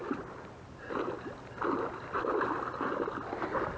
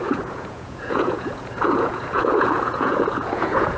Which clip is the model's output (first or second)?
second